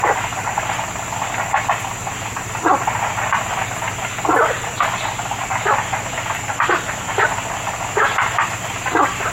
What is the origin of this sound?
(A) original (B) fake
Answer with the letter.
A